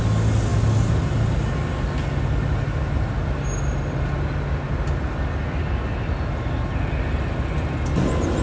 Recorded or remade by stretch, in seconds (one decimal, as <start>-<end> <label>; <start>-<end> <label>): 0.0-8.4 recorded